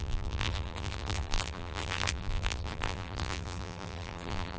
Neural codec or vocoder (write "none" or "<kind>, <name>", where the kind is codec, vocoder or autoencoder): vocoder, BigVGAN v2